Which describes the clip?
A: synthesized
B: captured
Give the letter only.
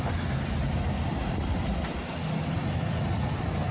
B